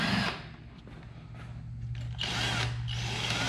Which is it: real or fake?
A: real